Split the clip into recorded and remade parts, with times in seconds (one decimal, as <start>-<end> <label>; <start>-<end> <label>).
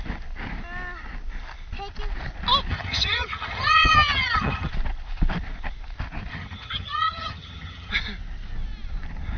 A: 0.0-2.7 recorded; 2.7-4.7 remade; 4.7-6.3 recorded; 6.3-7.9 remade; 7.9-9.4 recorded